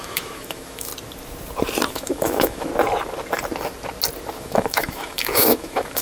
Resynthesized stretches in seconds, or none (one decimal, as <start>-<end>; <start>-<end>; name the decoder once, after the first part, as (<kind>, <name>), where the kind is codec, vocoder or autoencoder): 0.0-0.9 (autoencoder, DAC-VAE); 1.9-2.7; 4.4-6.0